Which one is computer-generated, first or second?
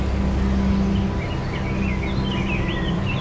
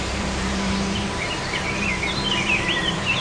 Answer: second